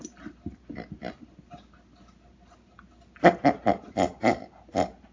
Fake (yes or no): no